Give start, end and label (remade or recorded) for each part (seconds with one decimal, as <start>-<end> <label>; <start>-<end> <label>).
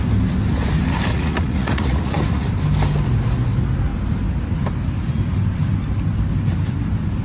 0.0-1.1 recorded; 1.1-2.5 remade; 2.5-7.2 recorded